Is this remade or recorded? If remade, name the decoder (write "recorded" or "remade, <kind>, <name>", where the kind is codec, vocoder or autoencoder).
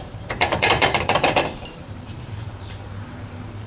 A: remade, vocoder, BigVGAN v2